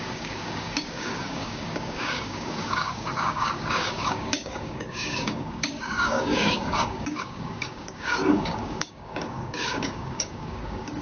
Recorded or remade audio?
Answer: remade